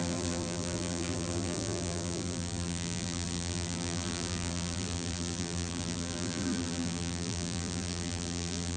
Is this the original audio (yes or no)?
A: no